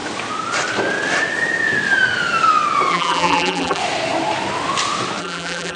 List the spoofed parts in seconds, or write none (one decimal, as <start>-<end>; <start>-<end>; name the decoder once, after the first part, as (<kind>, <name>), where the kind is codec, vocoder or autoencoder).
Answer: 2.9-3.8 (vocoder, BigVGAN v2); 5.2-5.8